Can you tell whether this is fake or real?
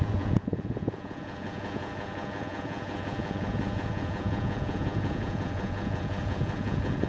fake